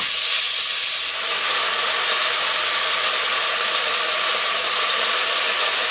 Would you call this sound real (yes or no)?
yes